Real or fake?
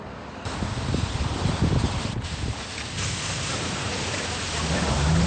real